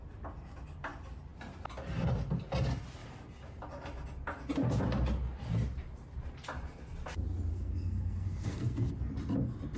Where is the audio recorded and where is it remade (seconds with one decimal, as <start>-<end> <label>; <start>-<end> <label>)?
0.0-7.5 recorded; 7.5-8.9 remade; 8.9-9.8 recorded